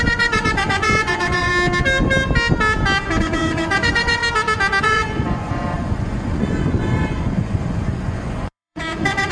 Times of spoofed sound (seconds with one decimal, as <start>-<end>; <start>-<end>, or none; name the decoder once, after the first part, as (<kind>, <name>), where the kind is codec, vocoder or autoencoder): 0.0-1.5 (vocoder, Vocos); 3.2-4.2; 4.8-9.3